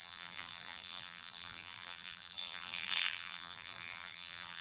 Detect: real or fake fake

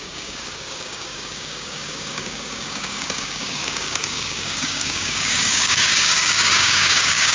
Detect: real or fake fake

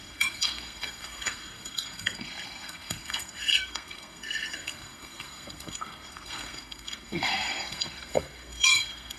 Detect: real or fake fake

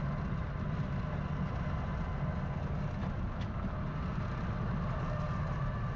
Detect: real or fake real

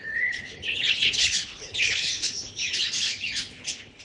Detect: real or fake fake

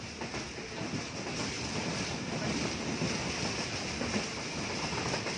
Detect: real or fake real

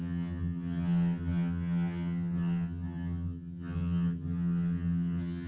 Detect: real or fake fake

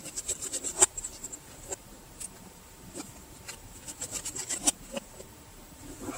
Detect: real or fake fake